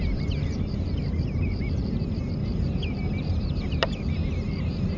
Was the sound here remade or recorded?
remade